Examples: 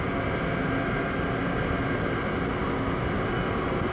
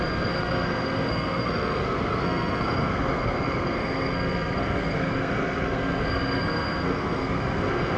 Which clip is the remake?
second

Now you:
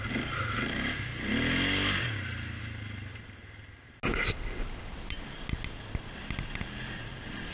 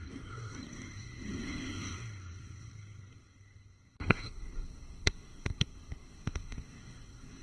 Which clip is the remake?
second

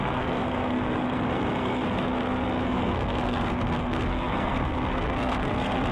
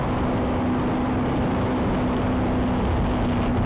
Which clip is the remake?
first